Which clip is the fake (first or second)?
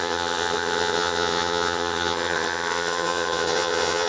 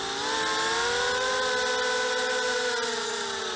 first